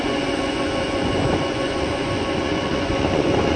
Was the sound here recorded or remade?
remade